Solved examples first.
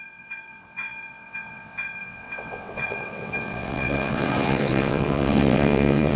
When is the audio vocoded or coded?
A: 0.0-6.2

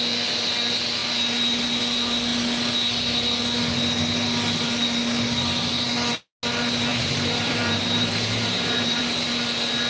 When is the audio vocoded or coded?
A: 6.9-9.0

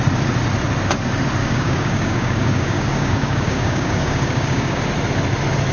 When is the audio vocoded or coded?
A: 1.4-4.8